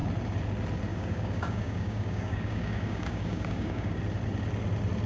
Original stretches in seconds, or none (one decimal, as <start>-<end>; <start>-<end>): 0.0-0.9; 4.0-5.1

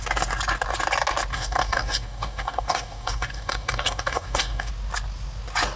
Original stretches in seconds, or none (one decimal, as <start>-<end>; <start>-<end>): 0.0-1.3; 4.7-5.8